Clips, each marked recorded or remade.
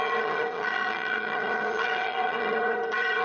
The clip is remade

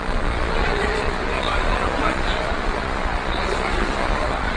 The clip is remade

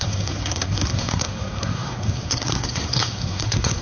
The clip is remade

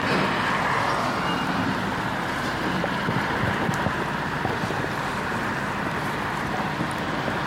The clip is remade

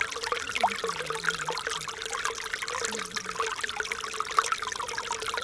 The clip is recorded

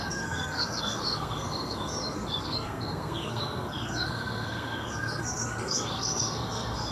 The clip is remade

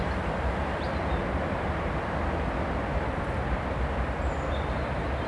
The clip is recorded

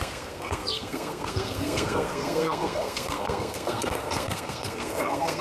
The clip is remade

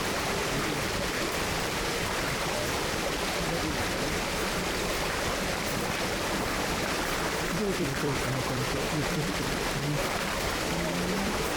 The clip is remade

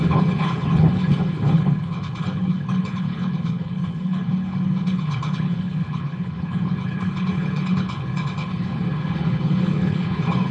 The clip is remade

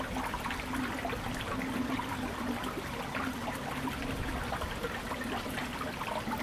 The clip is recorded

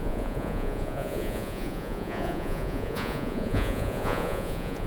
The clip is remade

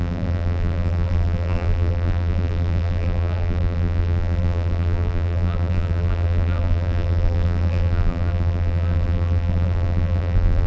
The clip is remade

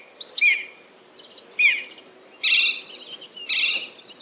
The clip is recorded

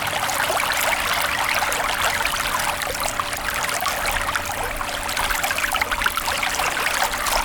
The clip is recorded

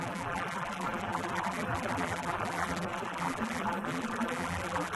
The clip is remade